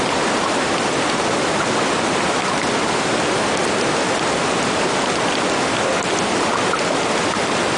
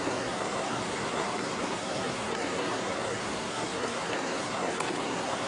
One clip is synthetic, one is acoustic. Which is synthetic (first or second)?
second